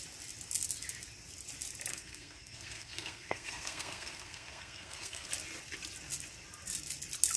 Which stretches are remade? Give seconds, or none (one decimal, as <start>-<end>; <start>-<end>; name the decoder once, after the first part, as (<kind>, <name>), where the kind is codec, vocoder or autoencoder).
1.9-5.3 (codec, SNAC)